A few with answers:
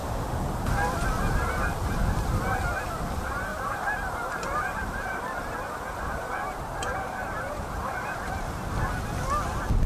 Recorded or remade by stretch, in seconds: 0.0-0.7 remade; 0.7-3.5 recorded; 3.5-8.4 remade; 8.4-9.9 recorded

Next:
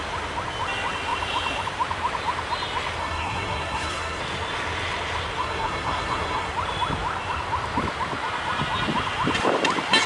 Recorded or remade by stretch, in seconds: 0.0-3.0 recorded; 3.0-4.2 remade; 4.2-5.4 recorded; 5.4-6.5 remade; 6.5-10.1 recorded